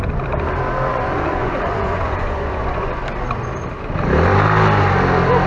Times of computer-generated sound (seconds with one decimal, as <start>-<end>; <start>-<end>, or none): 0.9-3.0